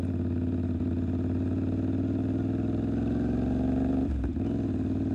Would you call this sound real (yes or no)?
yes